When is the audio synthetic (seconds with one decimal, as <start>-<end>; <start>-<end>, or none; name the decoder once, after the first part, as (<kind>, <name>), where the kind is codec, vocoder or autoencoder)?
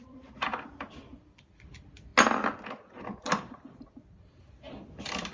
0.0-2.1 (vocoder, BigVGAN v2); 4.4-5.3